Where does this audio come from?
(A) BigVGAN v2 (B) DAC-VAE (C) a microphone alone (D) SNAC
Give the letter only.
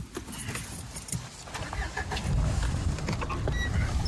C